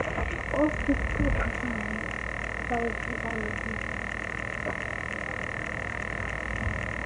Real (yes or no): yes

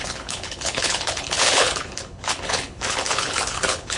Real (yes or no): no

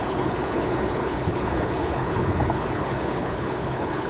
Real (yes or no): no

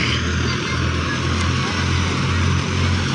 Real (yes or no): yes